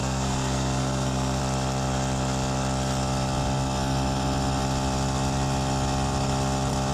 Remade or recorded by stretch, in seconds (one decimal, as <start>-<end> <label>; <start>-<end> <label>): 0.0-1.4 remade; 1.4-6.9 recorded